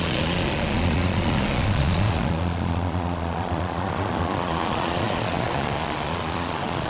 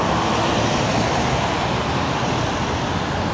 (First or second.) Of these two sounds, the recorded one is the second